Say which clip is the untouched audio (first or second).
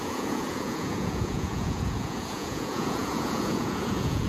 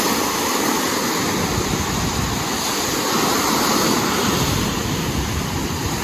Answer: second